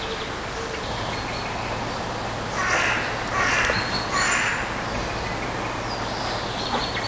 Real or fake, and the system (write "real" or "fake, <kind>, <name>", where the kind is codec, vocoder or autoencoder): real